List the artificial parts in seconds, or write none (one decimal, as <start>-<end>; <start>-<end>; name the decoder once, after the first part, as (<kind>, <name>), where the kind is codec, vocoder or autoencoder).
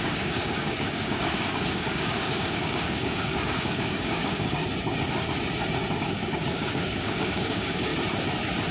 0.0-4.6 (codec, DAC); 6.0-7.9